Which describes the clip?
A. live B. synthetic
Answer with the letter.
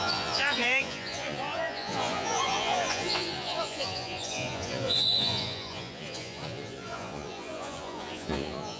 B